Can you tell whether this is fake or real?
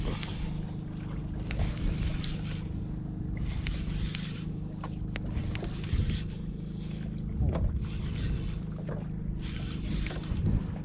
real